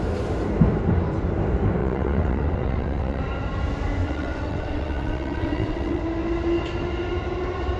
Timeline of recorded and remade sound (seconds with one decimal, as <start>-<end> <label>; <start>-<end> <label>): 0.0-1.8 recorded; 1.8-3.2 remade; 3.2-4.0 recorded; 4.0-6.0 remade; 6.0-7.8 recorded